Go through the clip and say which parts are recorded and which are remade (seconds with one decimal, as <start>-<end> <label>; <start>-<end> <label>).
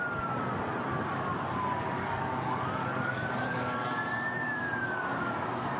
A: 0.0-0.9 recorded; 0.9-3.8 remade; 3.8-4.4 recorded; 4.4-5.8 remade